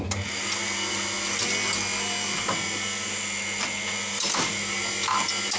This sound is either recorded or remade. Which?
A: recorded